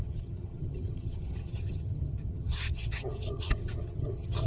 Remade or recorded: remade